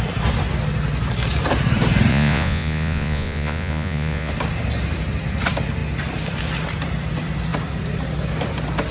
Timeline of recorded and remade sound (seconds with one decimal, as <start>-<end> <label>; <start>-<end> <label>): 0.0-2.1 recorded; 2.1-4.3 remade; 4.3-8.9 recorded